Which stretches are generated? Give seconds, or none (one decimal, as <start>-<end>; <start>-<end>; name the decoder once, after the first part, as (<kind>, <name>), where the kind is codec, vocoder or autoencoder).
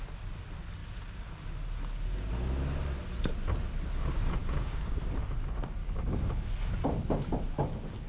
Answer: 4.4-5.0 (codec, DAC); 5.8-6.5